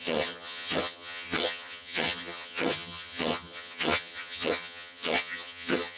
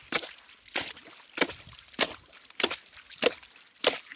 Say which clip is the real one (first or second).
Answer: second